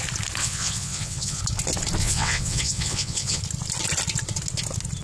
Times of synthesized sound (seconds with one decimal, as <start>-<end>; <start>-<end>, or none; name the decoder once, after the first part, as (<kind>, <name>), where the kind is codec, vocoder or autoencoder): 0.4-1.4 (vocoder, WaveNeXt); 2.0-3.4